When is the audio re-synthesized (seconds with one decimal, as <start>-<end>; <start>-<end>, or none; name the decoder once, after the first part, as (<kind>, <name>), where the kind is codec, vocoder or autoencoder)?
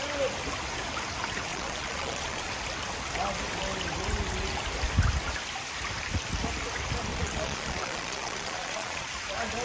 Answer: 1.5-2.5 (vocoder, Vocos); 7.1-9.1